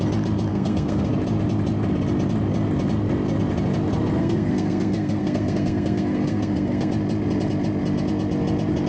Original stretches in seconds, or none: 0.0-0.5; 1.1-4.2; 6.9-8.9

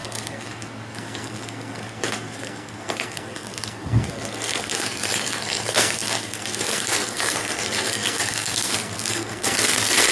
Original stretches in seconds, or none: none

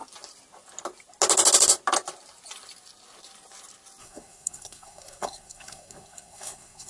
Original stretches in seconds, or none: 0.0-4.0